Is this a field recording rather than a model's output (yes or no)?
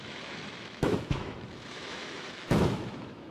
no